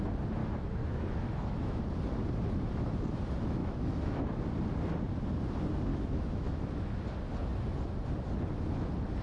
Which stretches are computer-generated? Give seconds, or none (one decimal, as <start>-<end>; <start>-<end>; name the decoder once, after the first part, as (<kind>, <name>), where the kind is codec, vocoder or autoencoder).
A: 0.4-1.8 (autoencoder, DAC-VAE); 3.6-4.4; 5.9-6.6